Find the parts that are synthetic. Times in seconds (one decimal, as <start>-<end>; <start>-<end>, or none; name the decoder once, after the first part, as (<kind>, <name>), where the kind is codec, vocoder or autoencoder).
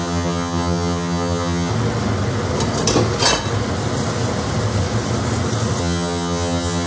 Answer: 0.0-1.7 (vocoder, HiFi-GAN); 5.8-6.9